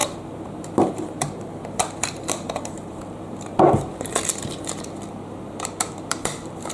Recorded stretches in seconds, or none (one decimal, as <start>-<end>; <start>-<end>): 3.7-6.7